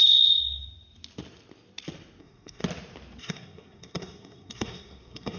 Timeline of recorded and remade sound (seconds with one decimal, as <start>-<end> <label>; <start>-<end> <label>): 0.0-2.2 recorded; 2.2-2.6 remade; 2.6-3.2 recorded; 3.2-5.4 remade